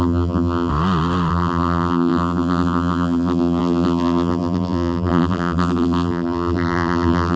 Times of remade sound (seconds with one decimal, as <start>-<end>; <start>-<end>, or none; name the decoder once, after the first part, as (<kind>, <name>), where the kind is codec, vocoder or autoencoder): 0.0-0.7 (vocoder, BigVGAN v2); 1.3-7.4